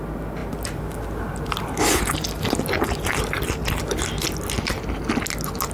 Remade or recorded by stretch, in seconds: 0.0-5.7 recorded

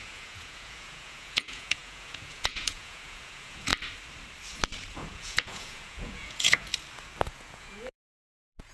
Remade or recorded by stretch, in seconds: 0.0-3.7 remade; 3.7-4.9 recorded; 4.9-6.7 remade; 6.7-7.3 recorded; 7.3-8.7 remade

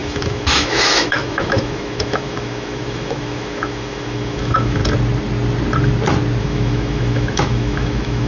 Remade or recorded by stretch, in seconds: 0.0-4.8 remade; 4.8-6.4 recorded; 6.4-8.3 remade

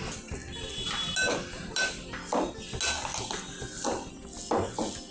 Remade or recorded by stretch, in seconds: 0.0-5.1 recorded

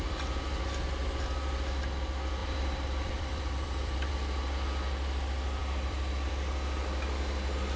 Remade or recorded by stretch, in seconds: 0.0-2.4 recorded; 2.4-4.1 remade; 4.1-5.6 recorded; 5.6-6.3 remade; 6.3-7.8 recorded

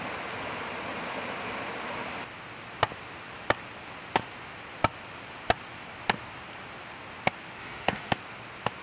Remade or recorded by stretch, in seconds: 0.0-7.6 recorded; 7.6-8.1 remade; 8.1-8.8 recorded

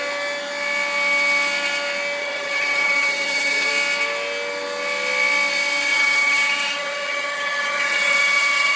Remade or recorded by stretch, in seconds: 0.0-2.2 recorded; 2.2-3.7 remade; 3.7-5.9 recorded; 5.9-8.8 remade

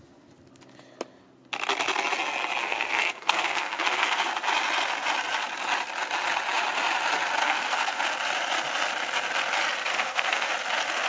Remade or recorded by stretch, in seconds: 0.0-2.6 recorded; 2.6-4.3 remade; 4.3-7.4 recorded; 7.4-8.0 remade; 8.0-9.9 recorded; 9.9-10.5 remade; 10.5-11.1 recorded